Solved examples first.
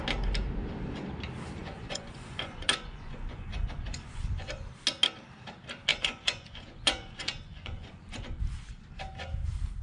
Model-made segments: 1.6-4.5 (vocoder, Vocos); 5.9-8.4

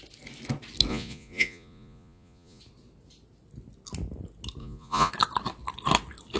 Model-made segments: 0.9-2.6 (vocoder, Vocos); 4.6-5.1

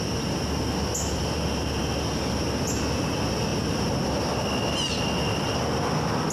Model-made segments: none

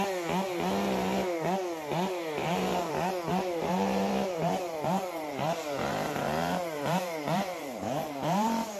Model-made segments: 2.4-2.9 (vocoder, BigVGAN v2); 3.3-8.8

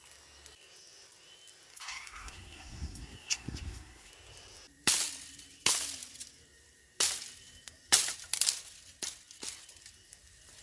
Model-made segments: 1.7-4.1 (codec, SNAC)